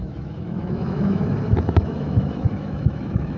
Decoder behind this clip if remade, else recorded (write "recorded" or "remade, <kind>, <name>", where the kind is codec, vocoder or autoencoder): remade, autoencoder, DAC-VAE